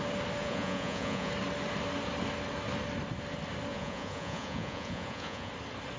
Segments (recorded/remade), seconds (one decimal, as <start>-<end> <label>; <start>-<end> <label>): 0.0-0.4 recorded; 0.4-1.3 remade; 1.3-3.7 recorded; 3.7-5.5 remade; 5.5-6.0 recorded